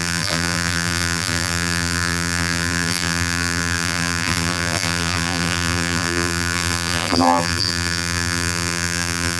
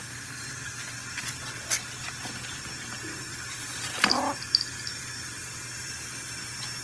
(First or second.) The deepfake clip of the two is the first